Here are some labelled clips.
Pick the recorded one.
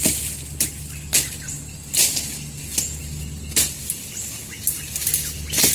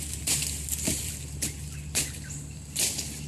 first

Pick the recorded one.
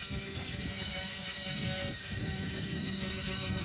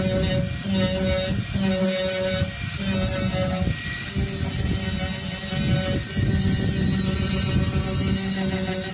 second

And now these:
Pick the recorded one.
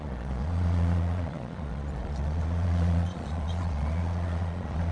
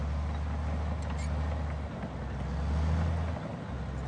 second